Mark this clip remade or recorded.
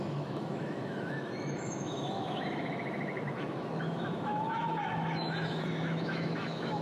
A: remade